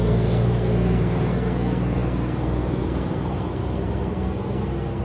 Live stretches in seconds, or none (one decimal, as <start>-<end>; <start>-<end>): none